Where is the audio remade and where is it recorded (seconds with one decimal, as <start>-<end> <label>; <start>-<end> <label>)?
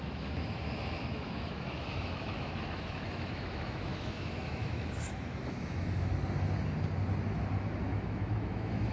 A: 0.0-6.1 remade; 6.1-7.8 recorded; 7.8-8.9 remade